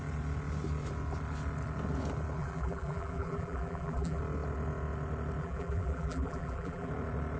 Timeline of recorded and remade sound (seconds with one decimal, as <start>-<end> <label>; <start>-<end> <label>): 0.0-2.4 recorded; 2.4-4.2 remade; 4.2-5.4 recorded; 5.4-6.9 remade; 6.9-7.4 recorded